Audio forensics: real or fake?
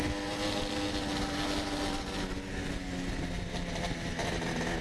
real